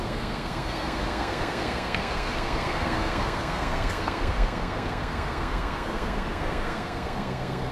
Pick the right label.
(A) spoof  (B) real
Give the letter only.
A